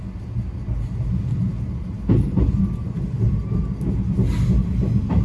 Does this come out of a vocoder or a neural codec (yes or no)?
no